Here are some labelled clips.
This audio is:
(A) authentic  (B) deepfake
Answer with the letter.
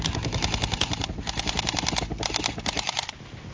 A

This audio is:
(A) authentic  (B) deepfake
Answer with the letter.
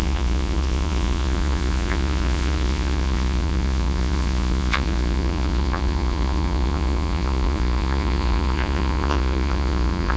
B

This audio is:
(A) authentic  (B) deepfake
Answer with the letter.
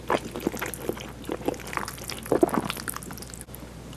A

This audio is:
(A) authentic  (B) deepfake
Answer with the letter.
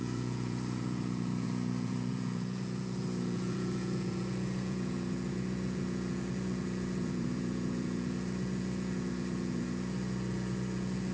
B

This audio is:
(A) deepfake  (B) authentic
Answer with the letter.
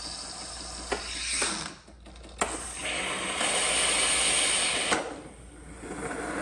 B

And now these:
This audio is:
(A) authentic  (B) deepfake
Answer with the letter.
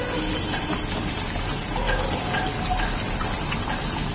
A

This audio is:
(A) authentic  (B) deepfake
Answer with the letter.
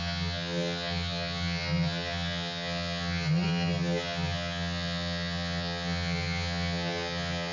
B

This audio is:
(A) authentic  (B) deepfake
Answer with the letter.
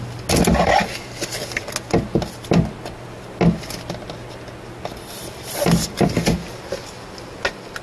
A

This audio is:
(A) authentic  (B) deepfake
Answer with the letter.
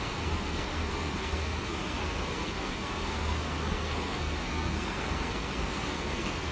B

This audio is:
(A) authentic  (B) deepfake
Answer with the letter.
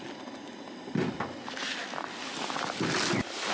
A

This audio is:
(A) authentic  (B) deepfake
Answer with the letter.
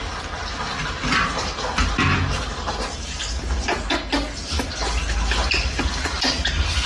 A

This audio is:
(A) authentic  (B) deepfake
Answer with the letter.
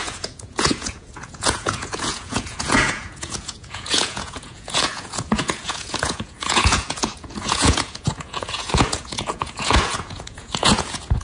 B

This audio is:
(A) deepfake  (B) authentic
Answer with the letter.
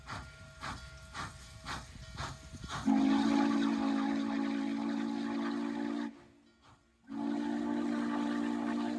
B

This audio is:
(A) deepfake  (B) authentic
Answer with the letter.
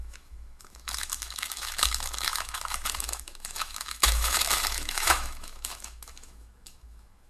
A